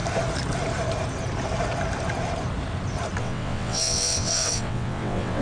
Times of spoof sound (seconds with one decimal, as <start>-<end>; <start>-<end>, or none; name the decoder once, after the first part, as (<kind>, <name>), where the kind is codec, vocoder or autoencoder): 3.2-5.4 (vocoder, WaveNeXt)